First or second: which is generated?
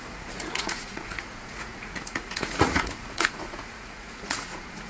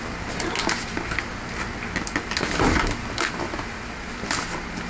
first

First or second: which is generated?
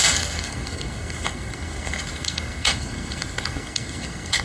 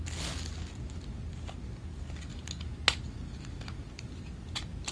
first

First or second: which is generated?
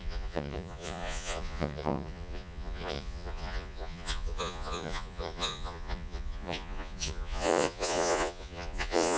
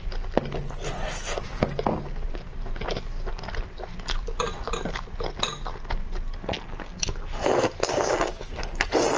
first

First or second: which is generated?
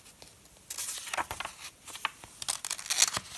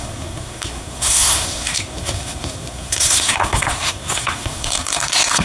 second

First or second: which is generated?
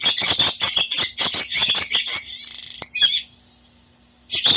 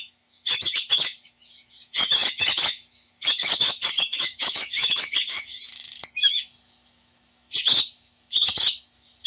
second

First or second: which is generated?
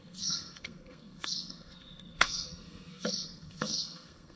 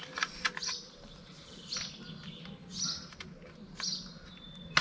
first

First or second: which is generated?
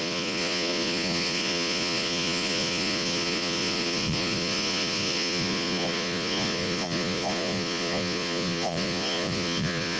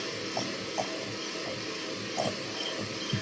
first